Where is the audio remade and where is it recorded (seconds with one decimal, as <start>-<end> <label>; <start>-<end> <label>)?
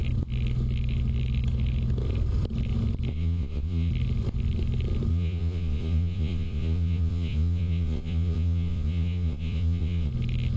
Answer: 0.0-3.1 recorded; 3.1-3.9 remade; 3.9-5.1 recorded; 5.1-10.1 remade; 10.1-10.6 recorded